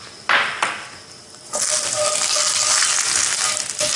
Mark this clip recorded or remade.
recorded